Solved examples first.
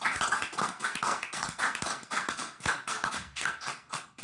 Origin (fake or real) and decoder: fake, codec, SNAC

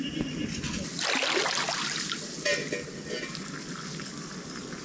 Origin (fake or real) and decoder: real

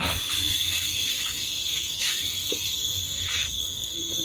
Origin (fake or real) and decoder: fake, codec, SNAC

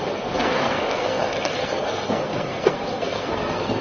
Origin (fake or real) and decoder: fake, codec, SNAC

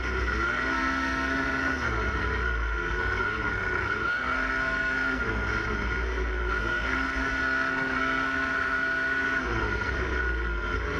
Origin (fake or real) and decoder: fake, codec, SNAC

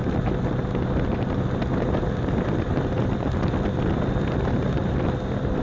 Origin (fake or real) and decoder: real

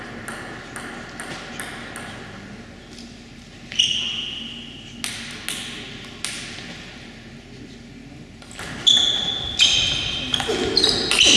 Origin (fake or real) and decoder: real